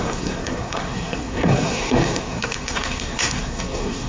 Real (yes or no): no